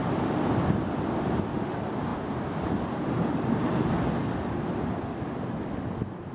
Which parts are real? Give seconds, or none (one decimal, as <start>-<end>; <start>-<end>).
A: 0.0-2.1